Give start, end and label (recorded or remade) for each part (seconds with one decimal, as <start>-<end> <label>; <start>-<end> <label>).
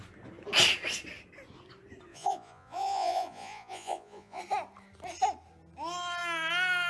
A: 0.0-2.1 recorded; 2.1-4.4 remade; 4.4-6.9 recorded